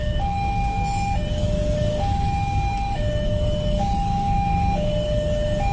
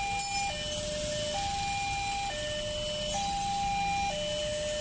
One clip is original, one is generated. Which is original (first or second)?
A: second